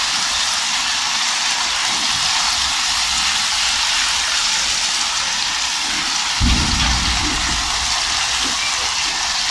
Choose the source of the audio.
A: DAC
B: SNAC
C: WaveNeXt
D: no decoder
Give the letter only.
D